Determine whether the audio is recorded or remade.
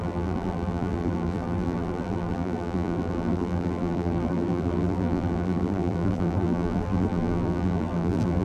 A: remade